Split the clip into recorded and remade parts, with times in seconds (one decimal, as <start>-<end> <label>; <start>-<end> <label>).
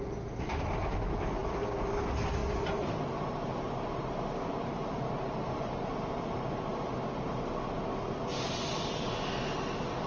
0.0-10.1 recorded